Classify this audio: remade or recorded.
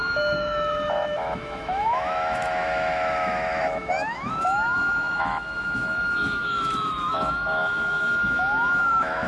remade